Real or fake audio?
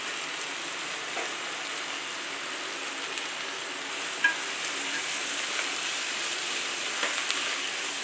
real